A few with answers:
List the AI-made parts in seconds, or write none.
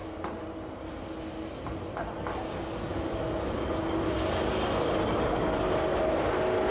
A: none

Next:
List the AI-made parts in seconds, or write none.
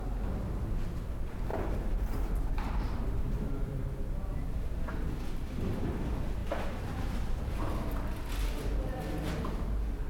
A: 1.5-4.9 (vocoder, BigVGAN v2); 6.4-7.7